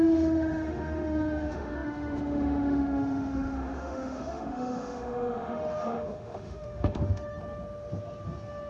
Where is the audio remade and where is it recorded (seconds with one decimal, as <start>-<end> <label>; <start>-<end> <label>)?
0.0-7.4 remade; 7.4-8.7 recorded